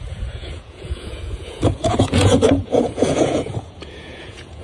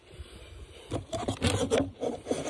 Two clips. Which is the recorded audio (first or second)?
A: second